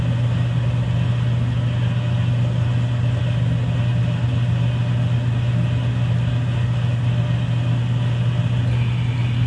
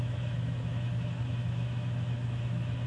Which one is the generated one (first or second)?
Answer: second